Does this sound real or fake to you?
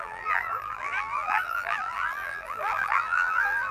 fake